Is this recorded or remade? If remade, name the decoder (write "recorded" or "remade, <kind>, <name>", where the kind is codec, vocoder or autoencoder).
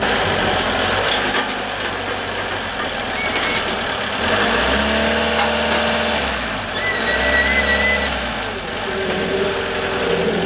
recorded